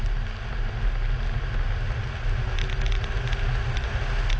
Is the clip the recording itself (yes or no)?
yes